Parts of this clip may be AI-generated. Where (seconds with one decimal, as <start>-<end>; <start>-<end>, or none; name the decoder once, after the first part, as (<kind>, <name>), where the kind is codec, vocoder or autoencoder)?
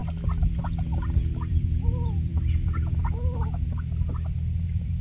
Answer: 1.3-2.3 (vocoder, BigVGAN v2); 4.6-5.0